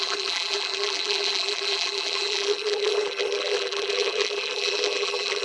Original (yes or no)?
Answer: no